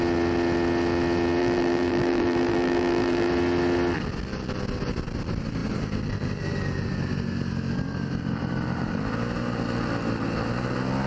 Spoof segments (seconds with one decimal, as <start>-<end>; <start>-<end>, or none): 1.4-3.3